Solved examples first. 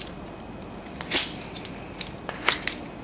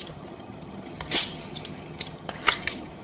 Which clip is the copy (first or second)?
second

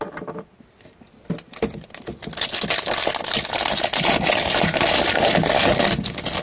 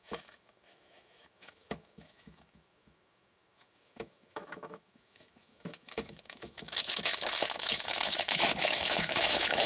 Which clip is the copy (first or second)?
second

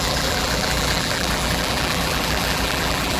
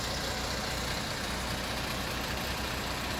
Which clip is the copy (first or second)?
first